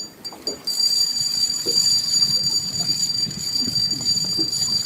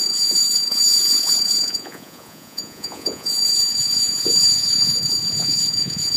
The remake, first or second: second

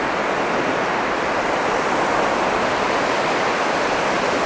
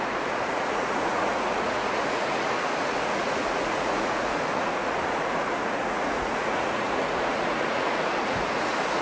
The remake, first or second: second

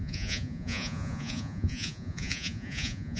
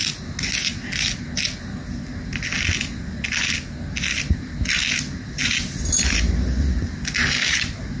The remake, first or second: first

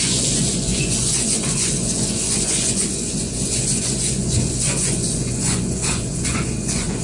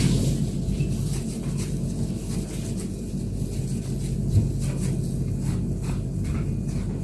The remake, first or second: first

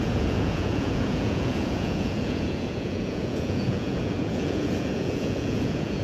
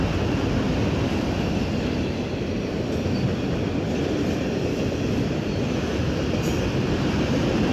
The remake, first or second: first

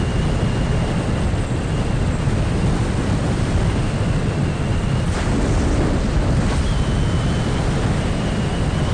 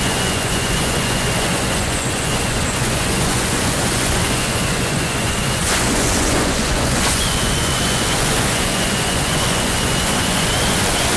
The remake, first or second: second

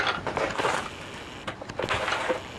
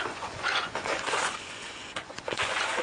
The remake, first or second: second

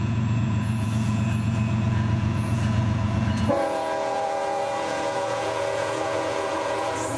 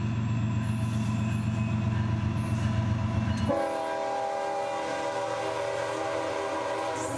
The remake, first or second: first